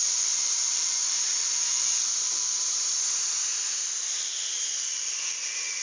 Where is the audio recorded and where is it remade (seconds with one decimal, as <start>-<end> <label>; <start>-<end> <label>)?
0.0-2.6 remade; 2.6-5.8 recorded